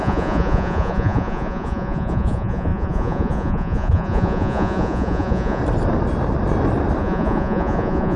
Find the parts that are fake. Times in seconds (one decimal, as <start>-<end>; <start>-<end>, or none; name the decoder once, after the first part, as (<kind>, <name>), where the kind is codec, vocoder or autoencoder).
0.0-5.6 (vocoder, Vocos); 7.0-8.2